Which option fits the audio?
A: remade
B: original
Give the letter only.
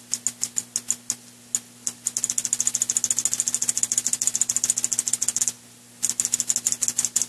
B